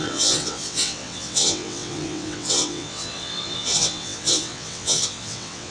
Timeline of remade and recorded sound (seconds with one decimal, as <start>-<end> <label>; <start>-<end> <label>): 0.0-5.7 remade